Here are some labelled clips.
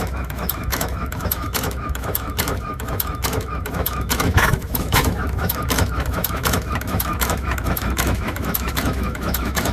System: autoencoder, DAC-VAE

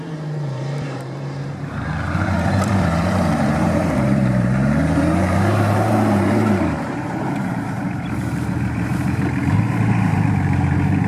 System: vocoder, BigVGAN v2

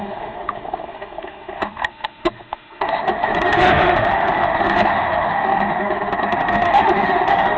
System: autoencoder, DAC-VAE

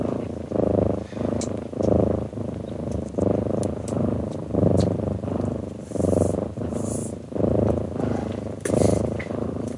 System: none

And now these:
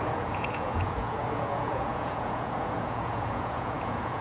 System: vocoder, Vocos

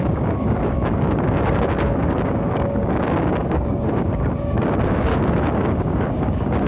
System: codec, DAC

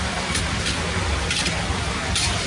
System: none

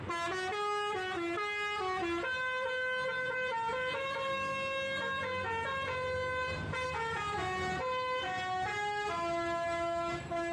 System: none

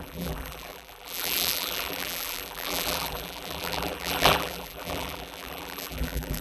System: vocoder, BigVGAN v2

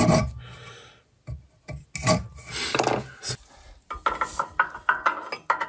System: none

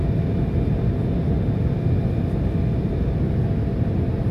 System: none